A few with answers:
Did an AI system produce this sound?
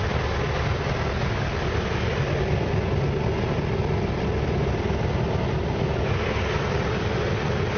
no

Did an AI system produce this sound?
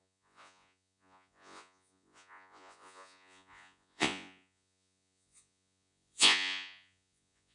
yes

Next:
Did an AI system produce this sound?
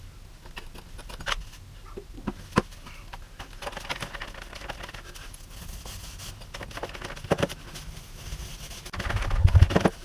no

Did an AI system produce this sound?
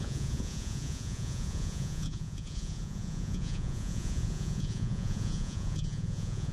yes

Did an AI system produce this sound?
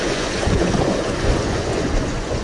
yes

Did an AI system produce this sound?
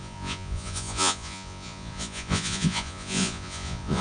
yes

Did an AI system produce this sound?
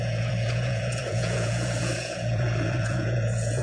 yes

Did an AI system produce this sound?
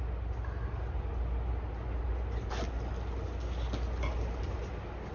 no